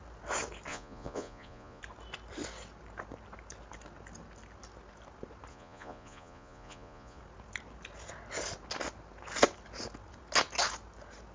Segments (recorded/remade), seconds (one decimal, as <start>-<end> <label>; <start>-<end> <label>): 0.0-0.7 recorded; 0.7-1.8 remade; 1.8-5.5 recorded; 5.5-7.2 remade; 7.2-11.3 recorded